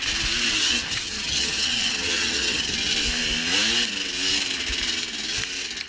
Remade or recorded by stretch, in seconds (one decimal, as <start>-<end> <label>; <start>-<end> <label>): 0.0-0.6 recorded; 0.6-2.9 remade; 2.9-5.9 recorded